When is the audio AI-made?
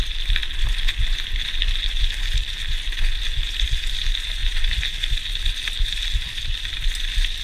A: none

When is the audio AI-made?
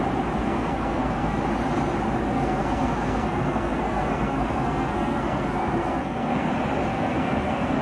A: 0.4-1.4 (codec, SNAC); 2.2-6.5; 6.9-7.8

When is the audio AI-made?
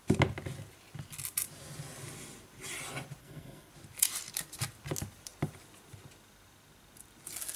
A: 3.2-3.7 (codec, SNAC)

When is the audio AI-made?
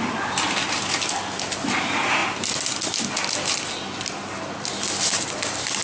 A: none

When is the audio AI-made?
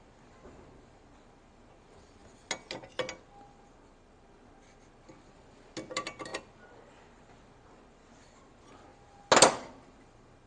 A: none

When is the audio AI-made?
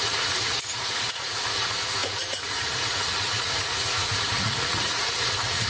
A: 0.0-5.7 (vocoder, Vocos)